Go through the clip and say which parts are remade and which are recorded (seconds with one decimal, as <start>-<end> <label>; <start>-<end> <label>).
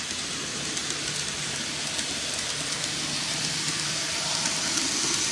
0.0-5.3 recorded